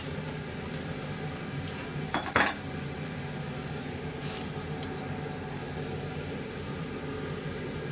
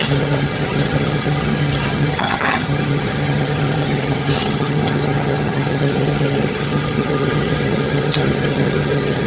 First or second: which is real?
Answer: first